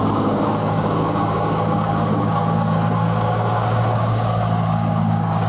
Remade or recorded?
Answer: remade